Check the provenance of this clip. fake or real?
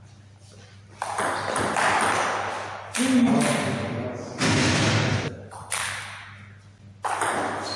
real